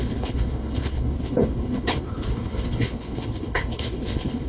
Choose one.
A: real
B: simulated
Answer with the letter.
B